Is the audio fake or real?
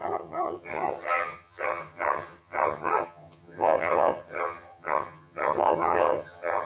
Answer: fake